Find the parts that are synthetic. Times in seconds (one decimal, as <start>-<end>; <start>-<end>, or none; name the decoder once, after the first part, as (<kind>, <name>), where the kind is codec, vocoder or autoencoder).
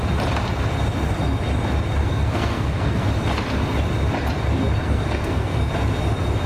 2.0-3.1 (codec, SNAC); 4.8-5.7